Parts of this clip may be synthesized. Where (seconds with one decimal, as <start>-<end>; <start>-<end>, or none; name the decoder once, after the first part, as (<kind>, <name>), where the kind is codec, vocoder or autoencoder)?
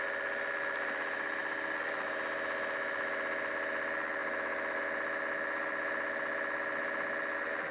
none